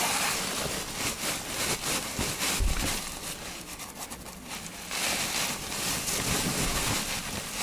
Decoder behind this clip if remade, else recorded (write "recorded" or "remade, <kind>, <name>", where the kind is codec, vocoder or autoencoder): recorded